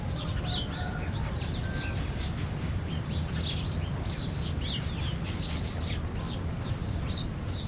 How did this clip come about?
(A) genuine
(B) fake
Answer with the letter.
A